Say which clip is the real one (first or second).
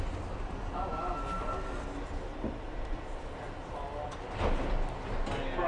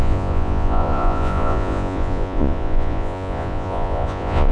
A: first